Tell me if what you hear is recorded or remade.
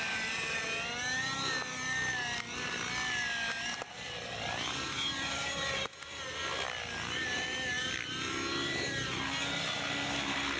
recorded